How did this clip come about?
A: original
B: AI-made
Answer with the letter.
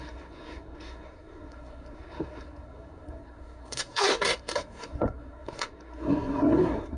B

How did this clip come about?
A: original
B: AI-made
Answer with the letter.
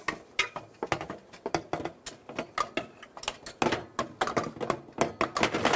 A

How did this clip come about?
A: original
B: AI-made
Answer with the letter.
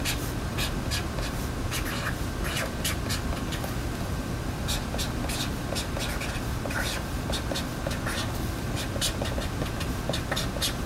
A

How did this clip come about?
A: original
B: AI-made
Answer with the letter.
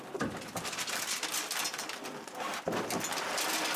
A